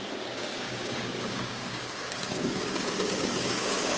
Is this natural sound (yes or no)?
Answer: no